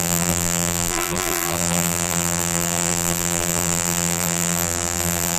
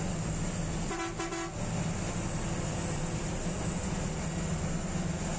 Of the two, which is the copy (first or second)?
first